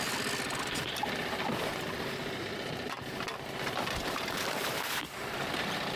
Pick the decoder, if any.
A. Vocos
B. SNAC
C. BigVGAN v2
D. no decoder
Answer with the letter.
D